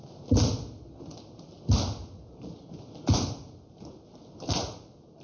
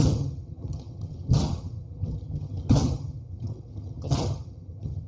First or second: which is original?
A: first